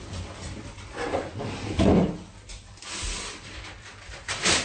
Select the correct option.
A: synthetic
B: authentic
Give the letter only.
A